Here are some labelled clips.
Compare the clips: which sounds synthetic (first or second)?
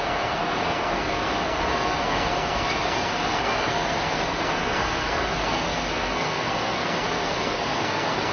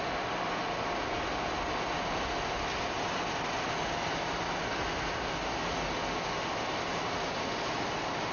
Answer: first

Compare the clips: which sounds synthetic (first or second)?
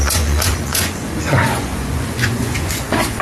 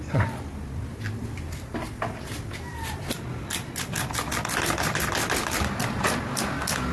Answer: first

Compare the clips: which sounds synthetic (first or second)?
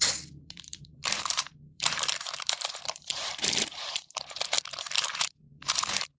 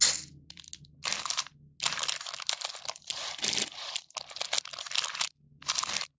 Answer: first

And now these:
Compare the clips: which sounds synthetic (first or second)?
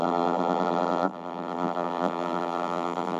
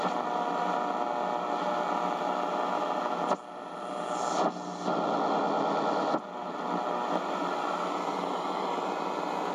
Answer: first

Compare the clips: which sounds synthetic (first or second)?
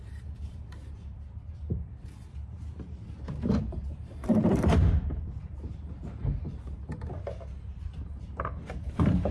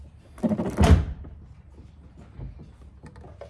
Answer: first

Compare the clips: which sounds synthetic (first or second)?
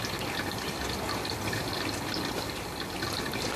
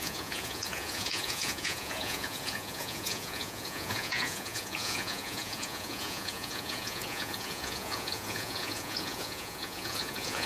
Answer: second